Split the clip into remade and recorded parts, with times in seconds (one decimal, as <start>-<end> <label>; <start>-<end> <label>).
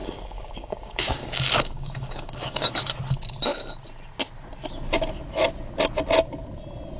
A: 0.0-2.7 remade; 2.7-7.0 recorded